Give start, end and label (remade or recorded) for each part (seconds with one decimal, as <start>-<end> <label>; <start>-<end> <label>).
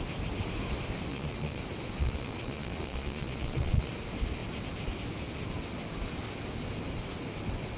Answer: 0.0-1.1 recorded; 1.1-1.6 remade; 1.6-2.0 recorded; 2.0-3.9 remade; 3.9-7.8 recorded